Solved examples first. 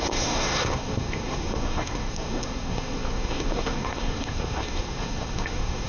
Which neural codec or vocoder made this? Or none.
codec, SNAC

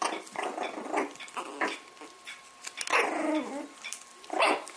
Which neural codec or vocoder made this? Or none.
none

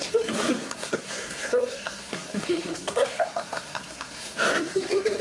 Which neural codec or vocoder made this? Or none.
codec, SNAC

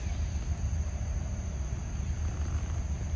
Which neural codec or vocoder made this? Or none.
none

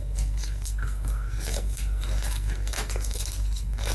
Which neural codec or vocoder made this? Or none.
codec, SNAC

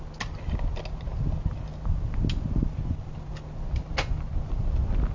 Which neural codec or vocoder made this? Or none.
none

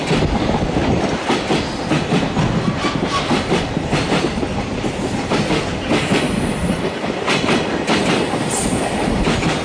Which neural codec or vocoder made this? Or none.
none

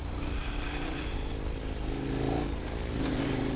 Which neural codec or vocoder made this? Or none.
none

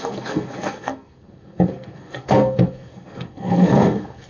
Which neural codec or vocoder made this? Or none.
codec, SNAC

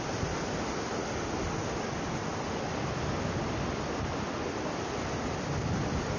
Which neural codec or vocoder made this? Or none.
none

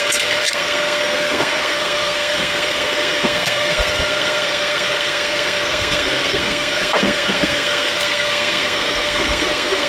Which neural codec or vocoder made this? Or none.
codec, SNAC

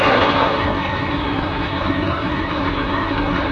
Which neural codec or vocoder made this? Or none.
codec, SNAC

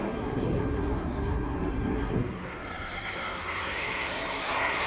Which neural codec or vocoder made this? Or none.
codec, SNAC